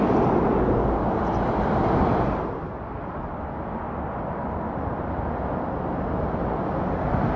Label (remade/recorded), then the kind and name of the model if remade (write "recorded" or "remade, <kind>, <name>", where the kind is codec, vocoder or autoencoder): recorded